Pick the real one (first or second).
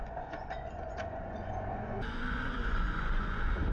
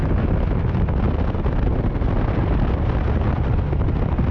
second